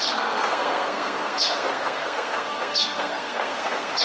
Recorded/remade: remade